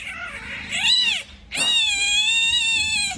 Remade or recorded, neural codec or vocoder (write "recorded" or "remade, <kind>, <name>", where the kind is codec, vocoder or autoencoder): recorded